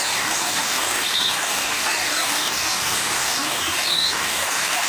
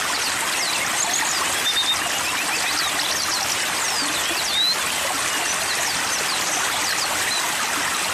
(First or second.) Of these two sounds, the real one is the second